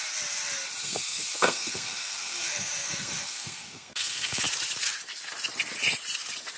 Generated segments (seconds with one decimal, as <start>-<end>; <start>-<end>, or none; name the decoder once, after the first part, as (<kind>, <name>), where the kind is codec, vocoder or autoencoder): 0.8-4.4 (codec, SNAC)